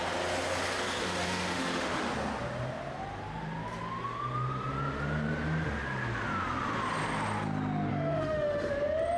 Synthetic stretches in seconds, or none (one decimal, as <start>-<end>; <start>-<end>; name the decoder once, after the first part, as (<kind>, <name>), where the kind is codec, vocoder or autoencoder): 1.0-2.1 (autoencoder, DAC-VAE); 7.9-8.7